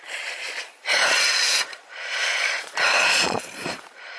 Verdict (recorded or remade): remade